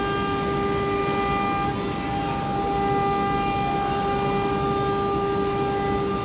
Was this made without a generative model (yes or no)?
yes